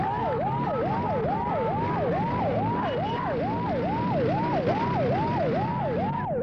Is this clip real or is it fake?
real